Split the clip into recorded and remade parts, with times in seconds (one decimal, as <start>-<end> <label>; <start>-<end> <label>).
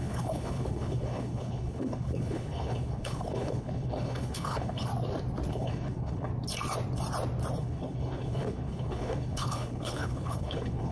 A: 0.0-4.9 remade; 4.9-5.5 recorded; 5.5-6.3 remade; 6.3-7.6 recorded; 7.6-10.9 remade